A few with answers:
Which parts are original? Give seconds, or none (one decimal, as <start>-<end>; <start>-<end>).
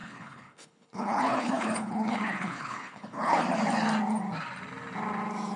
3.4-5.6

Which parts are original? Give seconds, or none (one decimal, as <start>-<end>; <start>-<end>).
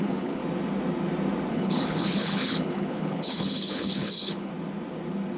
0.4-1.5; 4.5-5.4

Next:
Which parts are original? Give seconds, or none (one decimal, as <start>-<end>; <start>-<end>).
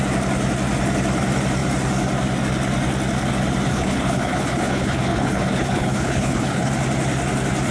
0.0-3.7; 6.7-7.7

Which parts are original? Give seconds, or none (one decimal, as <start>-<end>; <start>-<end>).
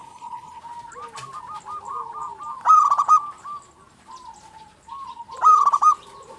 0.6-6.4